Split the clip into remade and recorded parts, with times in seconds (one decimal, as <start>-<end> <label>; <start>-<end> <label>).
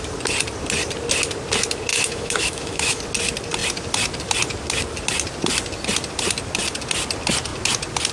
0.0-1.9 recorded; 1.9-3.0 remade; 3.0-8.1 recorded